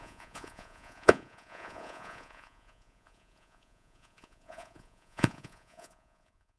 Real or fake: fake